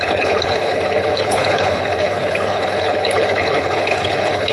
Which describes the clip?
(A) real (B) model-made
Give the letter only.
B